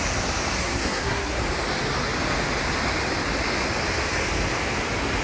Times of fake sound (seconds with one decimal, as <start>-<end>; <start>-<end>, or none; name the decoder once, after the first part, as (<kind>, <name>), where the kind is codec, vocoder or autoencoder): 0.6-1.4 (codec, SNAC)